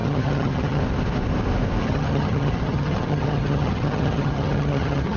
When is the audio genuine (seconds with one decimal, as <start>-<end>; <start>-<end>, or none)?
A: 0.8-1.8

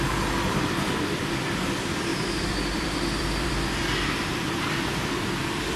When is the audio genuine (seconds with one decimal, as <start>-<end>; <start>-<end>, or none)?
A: 0.0-2.1